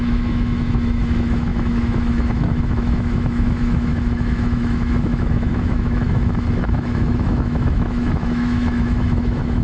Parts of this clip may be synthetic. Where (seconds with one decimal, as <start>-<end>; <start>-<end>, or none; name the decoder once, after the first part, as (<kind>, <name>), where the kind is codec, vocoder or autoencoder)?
0.0-9.6 (autoencoder, DAC-VAE)